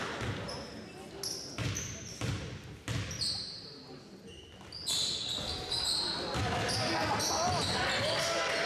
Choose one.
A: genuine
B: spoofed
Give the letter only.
A